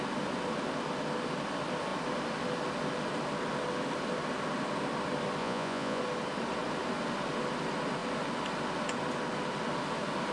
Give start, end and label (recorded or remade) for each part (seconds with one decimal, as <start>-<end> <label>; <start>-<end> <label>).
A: 0.0-5.4 recorded; 5.4-6.0 remade; 6.0-10.3 recorded